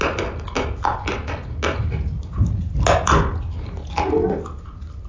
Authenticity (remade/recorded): recorded